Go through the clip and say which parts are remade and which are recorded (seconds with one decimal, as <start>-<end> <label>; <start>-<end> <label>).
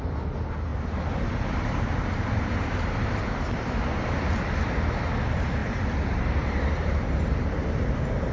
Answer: 0.0-0.7 recorded; 0.7-4.4 remade; 4.4-5.6 recorded; 5.6-7.1 remade; 7.1-8.3 recorded